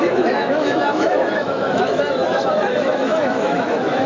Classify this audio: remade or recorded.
remade